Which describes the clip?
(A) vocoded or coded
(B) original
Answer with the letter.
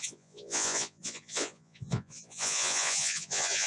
A